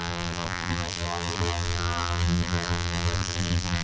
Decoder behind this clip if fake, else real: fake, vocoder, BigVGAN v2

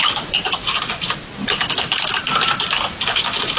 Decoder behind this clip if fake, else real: real